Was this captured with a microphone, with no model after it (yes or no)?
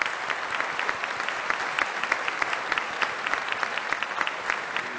yes